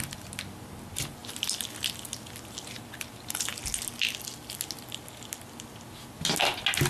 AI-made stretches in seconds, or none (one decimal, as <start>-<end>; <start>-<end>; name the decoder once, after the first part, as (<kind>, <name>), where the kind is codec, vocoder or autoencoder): none